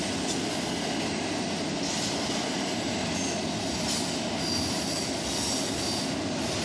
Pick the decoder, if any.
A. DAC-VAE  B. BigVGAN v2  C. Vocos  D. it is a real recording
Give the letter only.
D